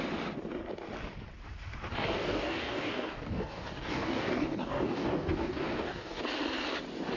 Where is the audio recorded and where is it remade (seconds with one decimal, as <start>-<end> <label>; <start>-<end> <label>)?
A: 0.0-1.9 recorded; 1.9-6.2 remade; 6.2-7.2 recorded